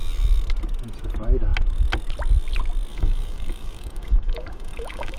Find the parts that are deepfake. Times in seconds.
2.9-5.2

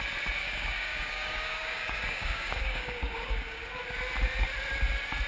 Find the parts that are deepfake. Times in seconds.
0.4-3.6

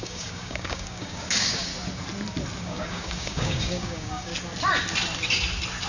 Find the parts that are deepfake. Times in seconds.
0.0-1.7; 2.6-4.3

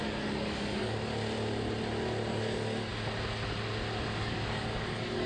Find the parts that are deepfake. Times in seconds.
0.0-1.1; 2.3-2.9; 4.2-5.3

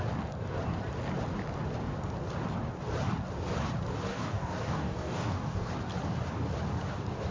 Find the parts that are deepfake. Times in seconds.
4.1-5.7

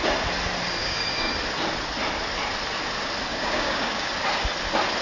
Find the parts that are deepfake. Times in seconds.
0.8-1.3; 3.3-4.1

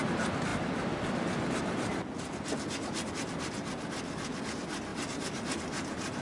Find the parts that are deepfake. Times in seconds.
none